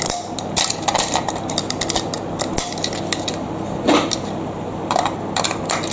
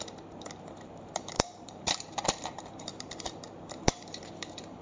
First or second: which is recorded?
first